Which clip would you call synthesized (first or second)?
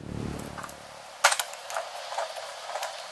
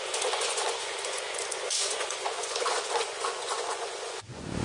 second